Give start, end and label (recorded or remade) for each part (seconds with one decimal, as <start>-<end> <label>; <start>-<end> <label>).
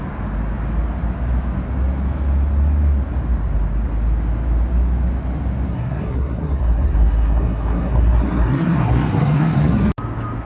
0.0-5.7 recorded; 5.7-9.9 remade; 9.9-10.4 recorded